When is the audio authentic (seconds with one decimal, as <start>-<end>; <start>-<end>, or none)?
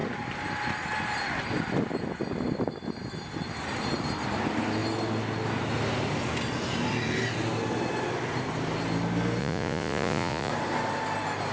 0.0-9.4; 10.5-11.5